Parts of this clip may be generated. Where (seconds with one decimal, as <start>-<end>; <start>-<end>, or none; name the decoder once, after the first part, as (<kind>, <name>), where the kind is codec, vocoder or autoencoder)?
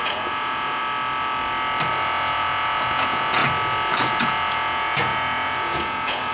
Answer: 0.0-0.8 (vocoder, Vocos); 1.9-3.4; 3.9-6.3